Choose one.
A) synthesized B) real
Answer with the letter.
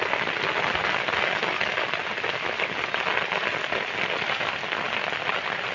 B